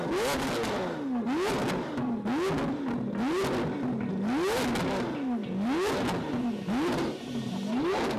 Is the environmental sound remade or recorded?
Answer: recorded